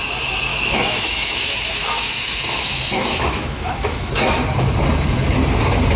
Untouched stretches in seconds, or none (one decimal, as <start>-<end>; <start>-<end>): 0.0-0.5; 4.1-6.0